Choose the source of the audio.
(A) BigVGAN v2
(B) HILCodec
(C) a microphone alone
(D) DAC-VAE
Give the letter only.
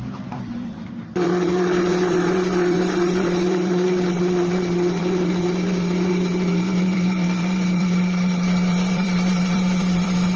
A